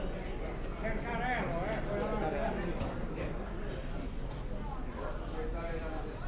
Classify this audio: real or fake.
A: real